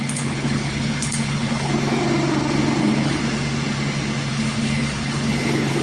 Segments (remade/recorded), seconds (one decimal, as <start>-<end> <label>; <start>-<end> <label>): 0.0-1.7 remade; 1.7-2.8 recorded; 2.8-3.2 remade; 3.2-4.3 recorded; 4.3-5.8 remade